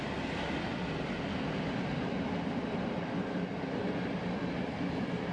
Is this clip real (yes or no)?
yes